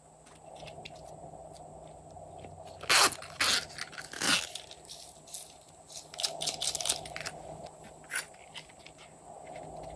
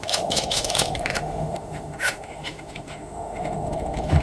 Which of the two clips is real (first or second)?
first